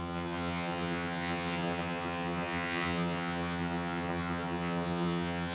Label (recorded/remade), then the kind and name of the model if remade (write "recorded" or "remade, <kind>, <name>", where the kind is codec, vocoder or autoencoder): remade, vocoder, HiFi-GAN